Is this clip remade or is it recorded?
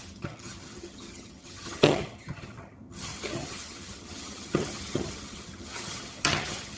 remade